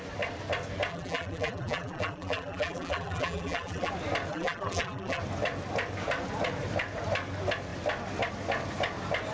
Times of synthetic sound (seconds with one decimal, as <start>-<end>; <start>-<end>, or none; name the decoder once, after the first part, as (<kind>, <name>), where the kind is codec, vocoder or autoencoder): 0.9-3.9 (vocoder, BigVGAN v2); 4.3-5.2